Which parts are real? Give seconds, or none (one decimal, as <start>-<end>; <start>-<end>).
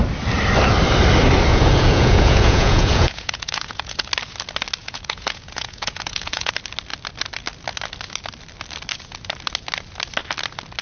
0.0-1.5; 4.1-4.8; 6.5-10.8